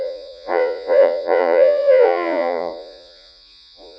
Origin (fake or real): fake